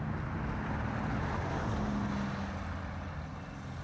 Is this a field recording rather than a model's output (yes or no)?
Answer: yes